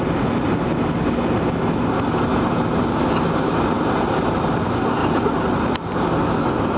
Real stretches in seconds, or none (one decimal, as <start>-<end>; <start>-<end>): 0.0-2.3; 4.5-5.0; 5.5-6.8